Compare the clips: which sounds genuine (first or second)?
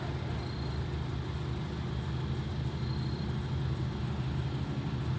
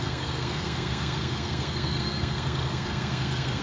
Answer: first